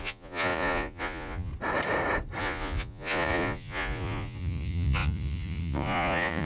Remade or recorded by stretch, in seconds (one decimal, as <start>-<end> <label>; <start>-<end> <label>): 0.0-1.5 remade; 1.5-2.4 recorded; 2.4-6.4 remade